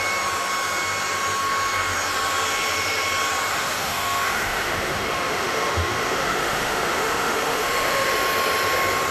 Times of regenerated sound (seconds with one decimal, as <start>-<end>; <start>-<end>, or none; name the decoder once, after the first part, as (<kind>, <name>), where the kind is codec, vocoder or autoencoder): 3.5-8.1 (autoencoder, DAC-VAE)